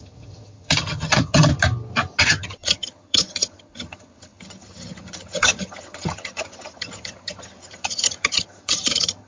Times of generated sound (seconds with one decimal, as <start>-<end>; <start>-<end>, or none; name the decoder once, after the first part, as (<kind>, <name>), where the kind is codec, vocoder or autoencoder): 0.0-1.5 (vocoder, HiFi-GAN); 2.2-9.3